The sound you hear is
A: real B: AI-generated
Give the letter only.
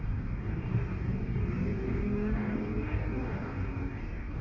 B